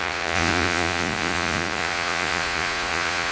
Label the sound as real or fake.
fake